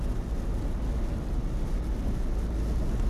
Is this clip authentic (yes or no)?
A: yes